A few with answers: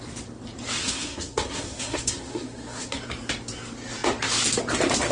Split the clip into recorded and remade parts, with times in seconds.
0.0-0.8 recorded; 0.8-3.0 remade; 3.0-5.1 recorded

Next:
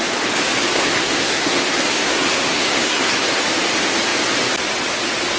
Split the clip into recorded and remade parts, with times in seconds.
0.0-0.7 recorded; 0.7-3.4 remade; 3.4-5.4 recorded

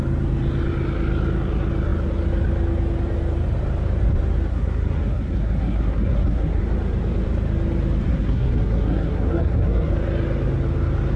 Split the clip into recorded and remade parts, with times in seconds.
0.0-4.5 recorded; 4.5-6.6 remade; 6.6-8.1 recorded; 8.1-9.9 remade; 9.9-11.2 recorded

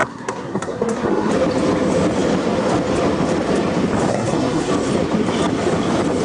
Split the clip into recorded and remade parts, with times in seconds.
0.0-1.3 remade; 1.3-4.1 recorded; 4.1-4.7 remade; 4.7-6.2 recorded

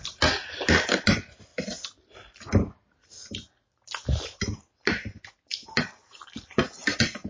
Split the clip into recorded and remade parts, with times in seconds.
0.0-7.3 recorded